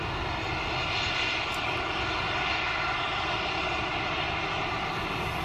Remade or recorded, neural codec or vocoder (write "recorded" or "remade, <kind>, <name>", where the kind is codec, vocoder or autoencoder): recorded